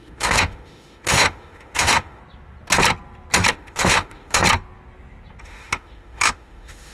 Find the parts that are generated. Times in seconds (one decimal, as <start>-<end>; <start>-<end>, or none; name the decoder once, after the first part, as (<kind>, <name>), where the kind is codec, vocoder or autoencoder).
0.0-2.2 (autoencoder, DAC-VAE); 3.5-4.4; 5.4-6.9